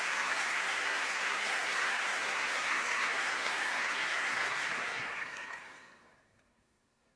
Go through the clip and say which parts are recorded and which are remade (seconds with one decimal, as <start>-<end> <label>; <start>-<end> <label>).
0.0-7.2 remade